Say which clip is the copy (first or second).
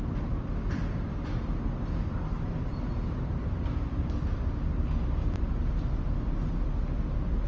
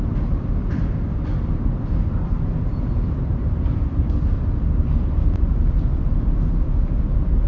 second